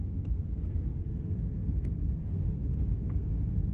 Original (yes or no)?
no